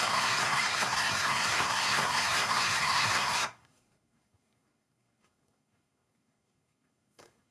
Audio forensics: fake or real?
fake